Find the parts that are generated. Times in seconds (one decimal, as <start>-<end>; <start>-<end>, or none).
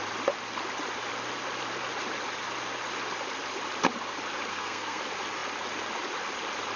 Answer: 4.5-5.0